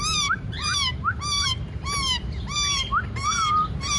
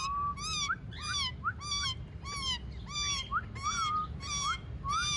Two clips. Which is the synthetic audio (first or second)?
first